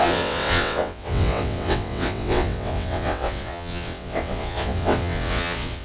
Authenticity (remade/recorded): remade